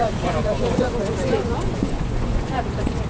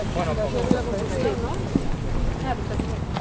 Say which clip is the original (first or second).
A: second